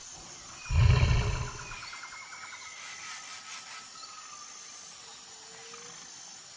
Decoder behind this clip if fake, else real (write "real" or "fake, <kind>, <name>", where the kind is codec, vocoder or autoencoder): real